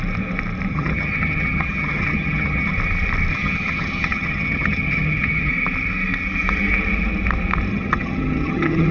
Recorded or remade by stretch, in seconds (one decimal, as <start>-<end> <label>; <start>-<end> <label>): 0.0-0.7 recorded; 0.7-2.7 remade; 2.7-3.3 recorded; 3.3-5.5 remade; 5.5-7.7 recorded; 7.7-8.9 remade